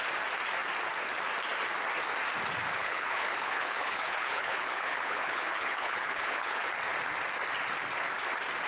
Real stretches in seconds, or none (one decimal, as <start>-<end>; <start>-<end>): 0.0-2.8; 6.7-8.7